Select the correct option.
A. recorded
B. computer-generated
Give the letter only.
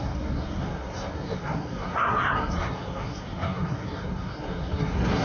B